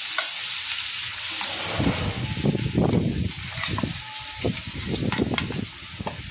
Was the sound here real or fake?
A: real